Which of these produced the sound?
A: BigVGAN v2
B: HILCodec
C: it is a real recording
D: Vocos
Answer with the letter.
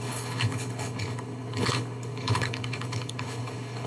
B